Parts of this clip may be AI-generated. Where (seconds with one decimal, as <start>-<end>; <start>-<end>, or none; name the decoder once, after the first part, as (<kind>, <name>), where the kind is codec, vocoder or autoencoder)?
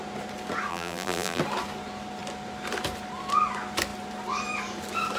0.7-1.4 (vocoder, BigVGAN v2)